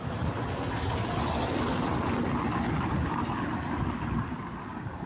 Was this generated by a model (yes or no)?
no